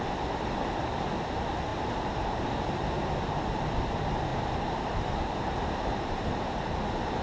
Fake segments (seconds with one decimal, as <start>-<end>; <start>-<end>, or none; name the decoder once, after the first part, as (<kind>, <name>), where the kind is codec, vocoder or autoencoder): 1.7-3.9 (vocoder, BigVGAN v2); 4.3-6.8